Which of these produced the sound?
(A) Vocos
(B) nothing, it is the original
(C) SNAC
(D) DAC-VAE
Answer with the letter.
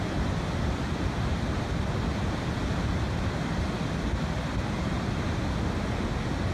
B